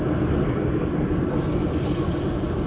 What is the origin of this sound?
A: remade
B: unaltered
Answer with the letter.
A